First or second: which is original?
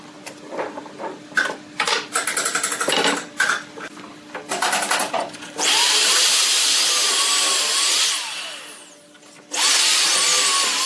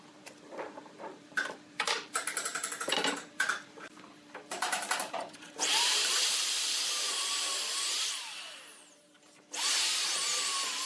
first